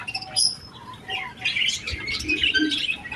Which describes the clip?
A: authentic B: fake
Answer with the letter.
A